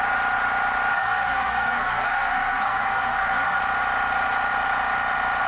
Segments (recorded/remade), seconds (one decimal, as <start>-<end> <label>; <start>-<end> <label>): 0.0-0.9 recorded; 0.9-3.6 remade; 3.6-5.5 recorded

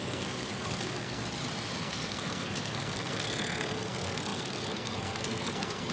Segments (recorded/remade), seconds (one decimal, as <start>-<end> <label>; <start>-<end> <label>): 0.0-1.2 remade; 1.2-1.8 recorded; 1.8-5.9 remade